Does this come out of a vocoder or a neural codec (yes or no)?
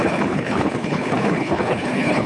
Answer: yes